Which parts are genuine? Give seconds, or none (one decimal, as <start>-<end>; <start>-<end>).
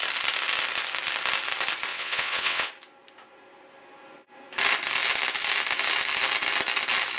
0.0-1.9; 2.7-7.2